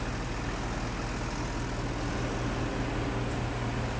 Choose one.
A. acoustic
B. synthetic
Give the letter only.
A